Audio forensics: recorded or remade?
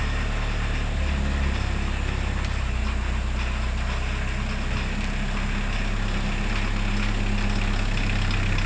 recorded